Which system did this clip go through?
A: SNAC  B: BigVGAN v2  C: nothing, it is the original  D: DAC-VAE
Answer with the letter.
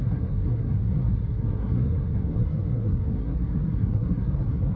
A